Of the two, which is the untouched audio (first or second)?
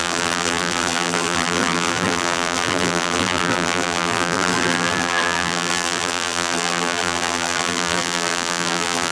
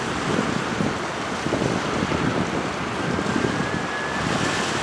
second